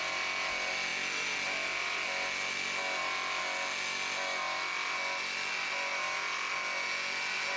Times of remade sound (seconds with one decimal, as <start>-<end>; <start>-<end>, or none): none